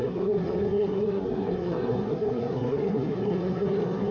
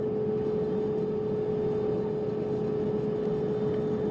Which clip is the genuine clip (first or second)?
second